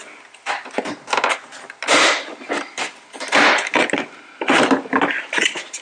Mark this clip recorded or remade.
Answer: recorded